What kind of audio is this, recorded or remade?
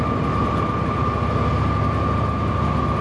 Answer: recorded